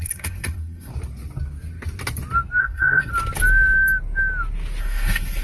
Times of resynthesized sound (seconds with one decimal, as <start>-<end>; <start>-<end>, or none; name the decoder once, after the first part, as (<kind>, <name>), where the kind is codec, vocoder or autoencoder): 0.0-0.9 (codec, SNAC); 2.6-3.1; 4.8-5.4